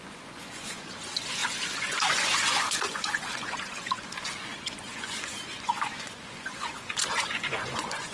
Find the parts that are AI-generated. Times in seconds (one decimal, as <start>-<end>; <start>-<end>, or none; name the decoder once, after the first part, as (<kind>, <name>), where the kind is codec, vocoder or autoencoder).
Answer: 0.0-8.1 (vocoder, Vocos)